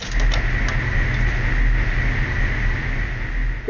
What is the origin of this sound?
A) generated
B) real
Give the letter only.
B